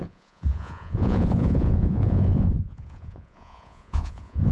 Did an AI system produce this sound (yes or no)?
yes